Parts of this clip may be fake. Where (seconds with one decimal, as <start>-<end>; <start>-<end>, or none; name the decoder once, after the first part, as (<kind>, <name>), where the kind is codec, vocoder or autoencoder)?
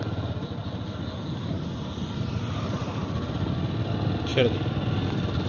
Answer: none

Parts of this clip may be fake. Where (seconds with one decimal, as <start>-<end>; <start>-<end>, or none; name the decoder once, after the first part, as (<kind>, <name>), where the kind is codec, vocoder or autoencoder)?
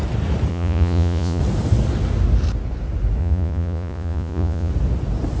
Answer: 0.5-1.4 (vocoder, Vocos); 3.2-4.7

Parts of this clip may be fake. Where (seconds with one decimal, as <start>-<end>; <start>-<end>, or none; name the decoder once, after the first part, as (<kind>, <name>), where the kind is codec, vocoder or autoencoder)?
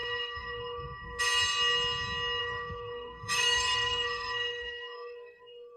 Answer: 0.0-1.2 (codec, SNAC); 2.4-5.8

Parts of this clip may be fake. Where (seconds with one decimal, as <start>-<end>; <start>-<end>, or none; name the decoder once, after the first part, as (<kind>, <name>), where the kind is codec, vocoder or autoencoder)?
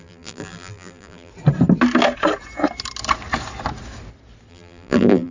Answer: 0.0-1.3 (vocoder, BigVGAN v2); 4.5-5.3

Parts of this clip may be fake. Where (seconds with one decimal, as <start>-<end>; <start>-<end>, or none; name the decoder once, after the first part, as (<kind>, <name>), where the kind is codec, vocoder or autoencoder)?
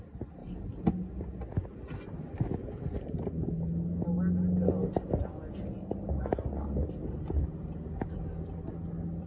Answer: 2.6-3.2 (vocoder, BigVGAN v2)